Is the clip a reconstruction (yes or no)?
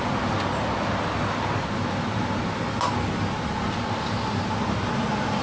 no